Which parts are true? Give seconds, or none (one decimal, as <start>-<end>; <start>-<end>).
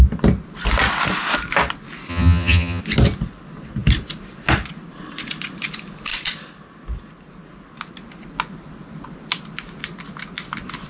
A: 0.0-2.1; 2.8-10.9